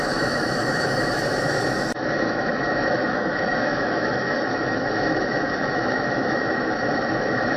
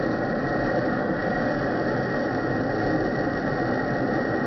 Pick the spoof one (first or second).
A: first